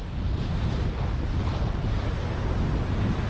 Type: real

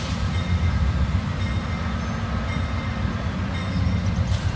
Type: real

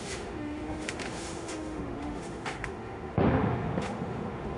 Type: fake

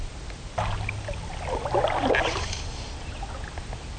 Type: real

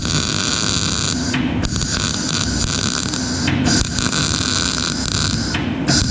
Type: real